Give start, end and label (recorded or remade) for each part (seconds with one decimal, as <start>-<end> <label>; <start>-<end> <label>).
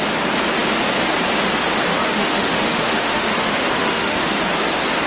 0.0-1.9 recorded; 1.9-4.4 remade; 4.4-5.1 recorded